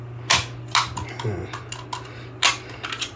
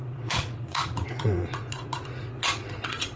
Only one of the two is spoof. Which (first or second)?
second